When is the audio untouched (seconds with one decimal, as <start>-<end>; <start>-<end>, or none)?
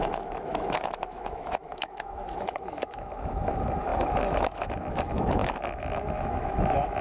none